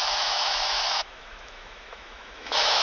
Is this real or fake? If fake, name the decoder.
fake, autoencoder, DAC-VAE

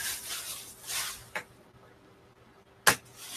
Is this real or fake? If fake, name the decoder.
real